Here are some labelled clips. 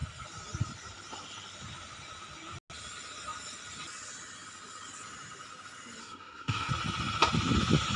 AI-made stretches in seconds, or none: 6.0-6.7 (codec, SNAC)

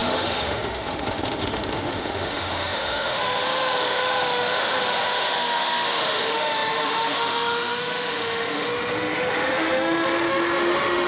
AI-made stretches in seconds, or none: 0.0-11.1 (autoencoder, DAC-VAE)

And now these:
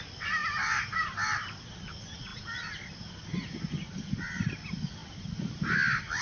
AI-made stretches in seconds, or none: none